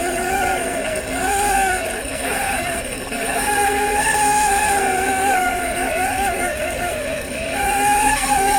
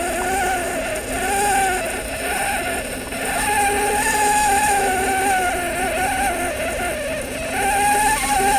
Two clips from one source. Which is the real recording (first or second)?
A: second